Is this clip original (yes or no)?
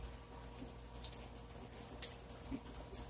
yes